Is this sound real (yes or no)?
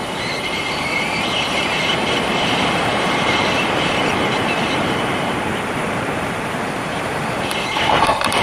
no